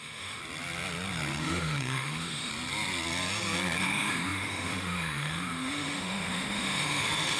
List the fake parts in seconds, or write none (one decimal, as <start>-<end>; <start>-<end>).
0.0-0.4; 1.4-2.5; 3.8-7.4